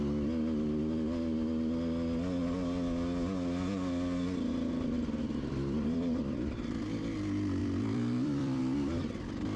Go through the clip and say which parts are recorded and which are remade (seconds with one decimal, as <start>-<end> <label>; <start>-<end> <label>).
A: 0.0-5.2 recorded; 5.2-6.2 remade; 6.2-7.6 recorded; 7.6-8.6 remade; 8.6-9.6 recorded